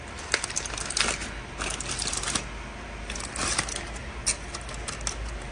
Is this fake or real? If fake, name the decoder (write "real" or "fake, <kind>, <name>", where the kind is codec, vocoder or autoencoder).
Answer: real